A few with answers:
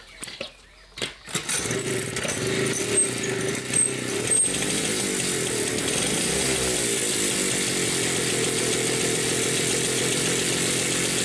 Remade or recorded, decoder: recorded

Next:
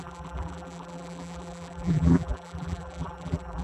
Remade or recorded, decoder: remade, vocoder, BigVGAN v2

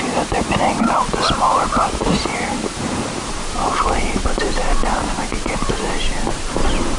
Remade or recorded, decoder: remade, vocoder, BigVGAN v2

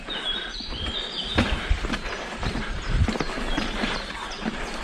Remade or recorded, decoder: remade, vocoder, BigVGAN v2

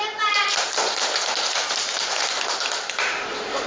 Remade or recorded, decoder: remade, vocoder, BigVGAN v2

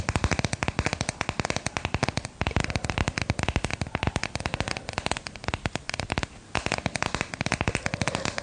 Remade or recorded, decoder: recorded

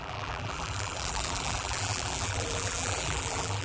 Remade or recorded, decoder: remade, vocoder, BigVGAN v2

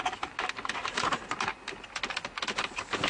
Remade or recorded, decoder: recorded